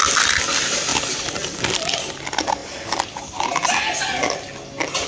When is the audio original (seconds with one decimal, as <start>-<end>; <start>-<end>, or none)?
0.0-5.1